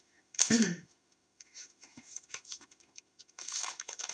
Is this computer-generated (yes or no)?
yes